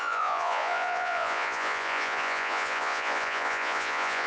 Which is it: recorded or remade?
remade